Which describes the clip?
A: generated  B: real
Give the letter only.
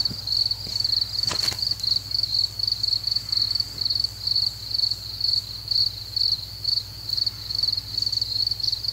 B